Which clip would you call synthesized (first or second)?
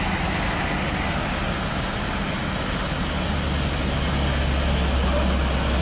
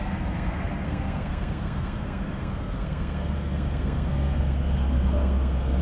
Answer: second